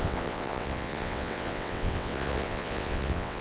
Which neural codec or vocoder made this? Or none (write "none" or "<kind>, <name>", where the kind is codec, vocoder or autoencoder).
vocoder, WaveNeXt